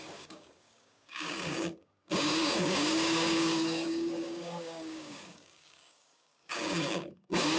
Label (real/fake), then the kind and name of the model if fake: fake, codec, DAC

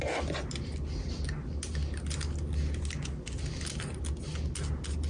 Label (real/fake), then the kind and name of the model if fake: real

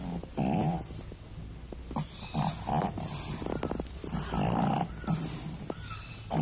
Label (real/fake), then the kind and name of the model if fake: real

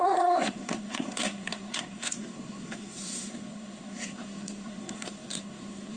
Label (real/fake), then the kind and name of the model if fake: fake, codec, SNAC